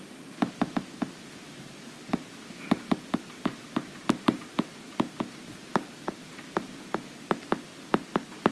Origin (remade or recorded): recorded